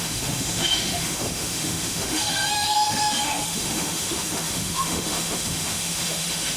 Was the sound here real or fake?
fake